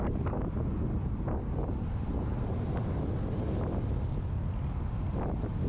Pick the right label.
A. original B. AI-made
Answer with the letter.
A